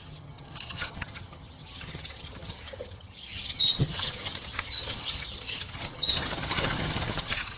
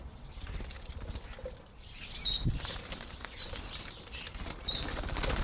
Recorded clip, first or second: second